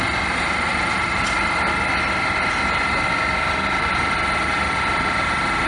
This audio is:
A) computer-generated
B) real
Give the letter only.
B